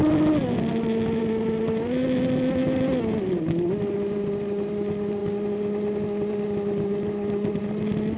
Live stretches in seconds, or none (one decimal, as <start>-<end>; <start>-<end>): 0.0-8.2